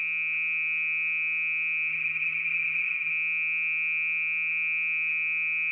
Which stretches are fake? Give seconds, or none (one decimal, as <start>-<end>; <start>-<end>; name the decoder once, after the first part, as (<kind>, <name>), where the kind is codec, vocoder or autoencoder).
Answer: 1.9-3.1 (vocoder, HiFi-GAN)